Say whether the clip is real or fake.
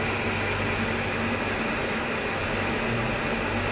real